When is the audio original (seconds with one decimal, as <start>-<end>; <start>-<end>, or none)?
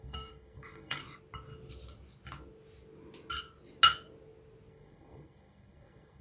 1.0-4.7